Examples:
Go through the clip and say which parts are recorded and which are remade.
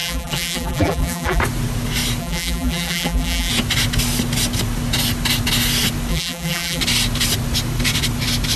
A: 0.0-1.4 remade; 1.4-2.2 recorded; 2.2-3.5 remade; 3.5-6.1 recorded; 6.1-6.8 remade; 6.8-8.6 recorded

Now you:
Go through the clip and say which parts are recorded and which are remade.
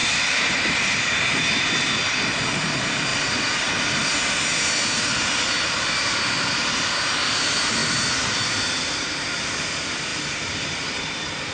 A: 0.0-1.9 remade; 1.9-3.1 recorded; 3.1-3.7 remade; 3.7-7.8 recorded; 7.8-8.9 remade; 8.9-10.1 recorded; 10.1-11.5 remade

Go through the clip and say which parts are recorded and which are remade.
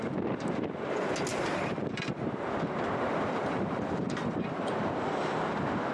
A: 0.0-1.3 recorded; 1.3-4.8 remade; 4.8-5.9 recorded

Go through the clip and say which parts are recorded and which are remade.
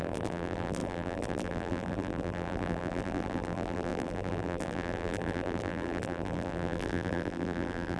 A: 0.0-8.0 remade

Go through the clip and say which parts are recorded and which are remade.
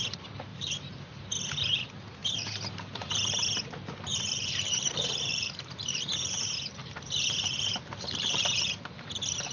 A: 0.0-0.5 recorded; 0.5-1.2 remade; 1.2-2.2 recorded; 2.2-2.9 remade; 2.9-4.1 recorded; 4.1-8.5 remade; 8.5-9.5 recorded